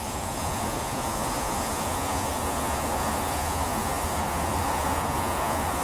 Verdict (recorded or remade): remade